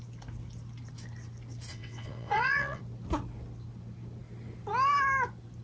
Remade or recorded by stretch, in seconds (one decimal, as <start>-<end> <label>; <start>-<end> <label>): 0.0-1.7 recorded; 1.7-2.8 remade; 2.8-5.6 recorded